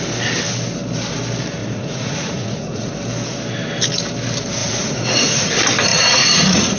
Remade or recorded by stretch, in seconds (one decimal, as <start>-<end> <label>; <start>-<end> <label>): 0.0-1.6 recorded; 1.6-2.9 remade; 2.9-4.6 recorded; 4.6-5.5 remade; 5.5-5.9 recorded; 5.9-6.8 remade